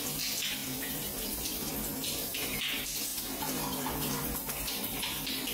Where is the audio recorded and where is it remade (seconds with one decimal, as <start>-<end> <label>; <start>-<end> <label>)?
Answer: 0.0-0.6 recorded; 0.6-1.7 remade; 1.7-3.1 recorded; 3.1-5.0 remade; 5.0-5.5 recorded